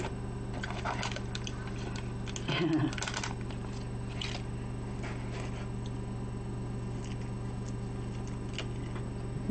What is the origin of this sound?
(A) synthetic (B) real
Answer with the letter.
B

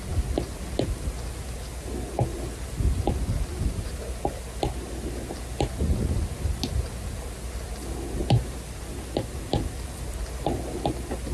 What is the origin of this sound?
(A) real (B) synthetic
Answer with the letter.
A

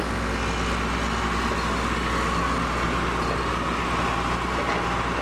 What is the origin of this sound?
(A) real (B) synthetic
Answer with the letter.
A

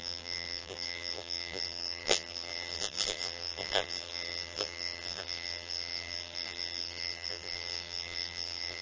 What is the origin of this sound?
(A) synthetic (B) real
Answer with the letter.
A